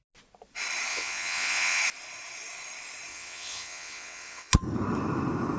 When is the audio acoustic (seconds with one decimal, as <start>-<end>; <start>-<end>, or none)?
0.0-0.9; 1.8-3.1; 4.5-5.6